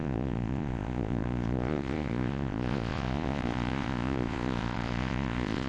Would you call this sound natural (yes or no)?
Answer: no